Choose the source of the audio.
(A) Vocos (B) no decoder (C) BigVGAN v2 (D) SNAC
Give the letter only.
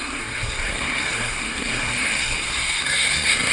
D